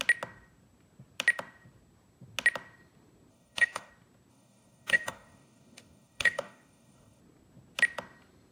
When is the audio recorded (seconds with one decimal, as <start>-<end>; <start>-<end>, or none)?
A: 0.0-3.3; 3.9-4.3; 7.2-8.5